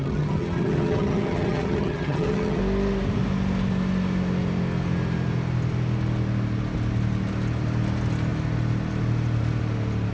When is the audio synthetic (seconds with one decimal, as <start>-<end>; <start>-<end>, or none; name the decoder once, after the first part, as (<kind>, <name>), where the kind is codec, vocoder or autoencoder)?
0.0-2.6 (vocoder, HiFi-GAN)